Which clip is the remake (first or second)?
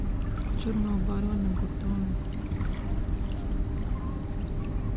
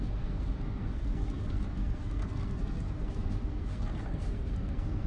second